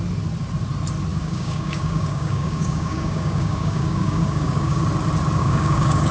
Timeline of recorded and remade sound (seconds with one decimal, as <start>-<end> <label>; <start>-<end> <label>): 0.0-1.1 recorded; 1.1-4.8 remade; 4.8-5.4 recorded; 5.4-6.1 remade